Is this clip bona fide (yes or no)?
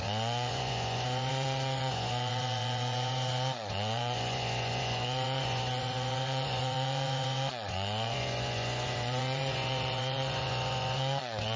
no